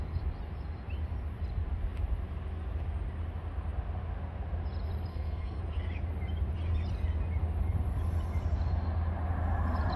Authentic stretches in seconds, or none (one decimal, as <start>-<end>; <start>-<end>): 0.0-5.1; 5.6-10.0